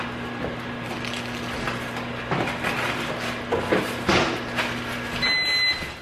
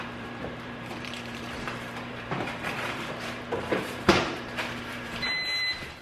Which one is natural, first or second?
first